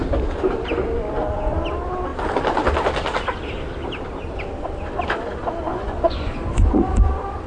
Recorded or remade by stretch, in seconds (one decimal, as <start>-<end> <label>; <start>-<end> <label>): 0.0-5.7 recorded; 5.7-7.1 remade; 7.1-7.5 recorded